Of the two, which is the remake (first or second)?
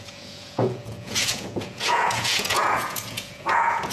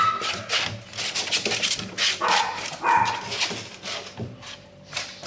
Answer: first